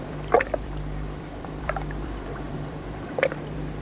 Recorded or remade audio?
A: remade